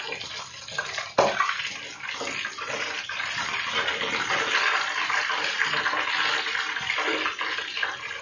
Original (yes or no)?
yes